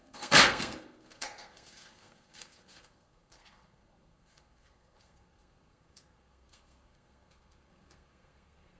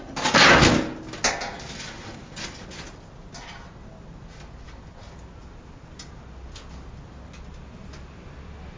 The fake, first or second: first